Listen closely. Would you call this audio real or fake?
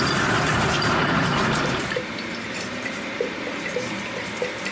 fake